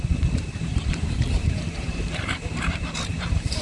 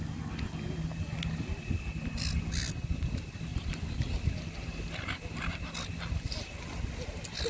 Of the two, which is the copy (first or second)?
first